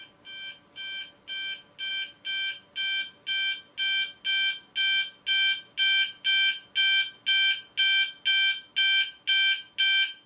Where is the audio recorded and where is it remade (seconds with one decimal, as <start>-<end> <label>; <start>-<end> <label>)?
0.0-10.3 recorded